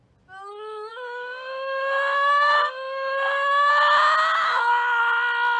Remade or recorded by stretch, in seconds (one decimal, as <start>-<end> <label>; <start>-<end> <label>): 0.0-0.9 recorded; 0.9-3.7 remade; 3.7-5.6 recorded